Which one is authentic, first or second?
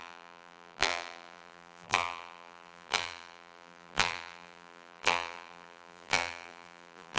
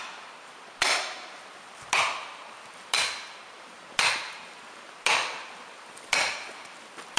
second